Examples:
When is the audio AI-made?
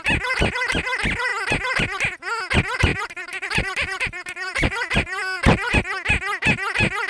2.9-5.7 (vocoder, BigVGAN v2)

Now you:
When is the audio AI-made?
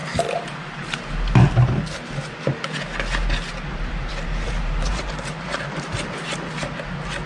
0.0-1.0 (vocoder, BigVGAN v2); 3.5-6.5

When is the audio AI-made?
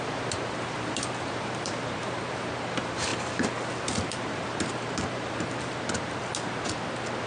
0.0-3.1 (vocoder, BigVGAN v2); 4.2-6.2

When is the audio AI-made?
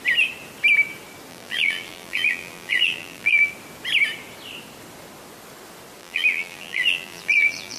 1.3-3.5 (vocoder, BigVGAN v2); 6.0-7.8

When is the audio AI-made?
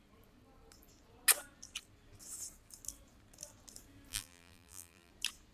4.1-5.1 (vocoder, BigVGAN v2)